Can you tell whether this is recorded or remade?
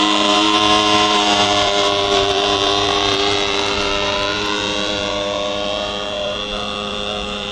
remade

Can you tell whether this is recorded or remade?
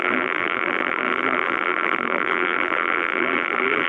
remade